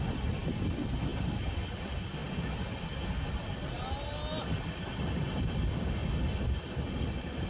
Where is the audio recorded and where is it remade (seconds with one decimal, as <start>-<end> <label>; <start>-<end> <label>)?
0.0-7.5 recorded